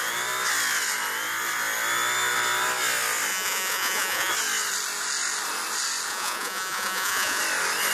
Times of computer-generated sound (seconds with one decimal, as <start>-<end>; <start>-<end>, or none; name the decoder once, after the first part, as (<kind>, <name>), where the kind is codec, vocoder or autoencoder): 3.3-4.3 (vocoder, Vocos); 6.1-7.4